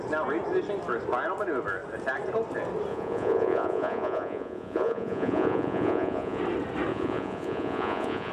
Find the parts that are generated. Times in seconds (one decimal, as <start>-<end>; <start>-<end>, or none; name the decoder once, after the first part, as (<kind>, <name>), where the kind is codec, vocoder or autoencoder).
2.9-6.4 (vocoder, Vocos); 6.9-8.3